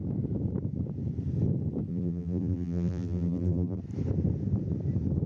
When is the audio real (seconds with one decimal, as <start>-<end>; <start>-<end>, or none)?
0.0-1.9; 3.8-5.3